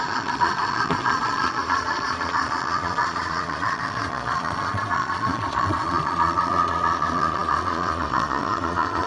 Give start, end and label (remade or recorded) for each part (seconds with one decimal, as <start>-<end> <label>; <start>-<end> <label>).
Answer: 0.0-9.1 remade